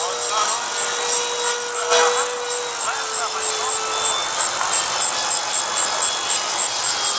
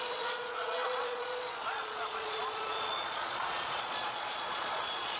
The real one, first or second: first